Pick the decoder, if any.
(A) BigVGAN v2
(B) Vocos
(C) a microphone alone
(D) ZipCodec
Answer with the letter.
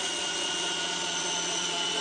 B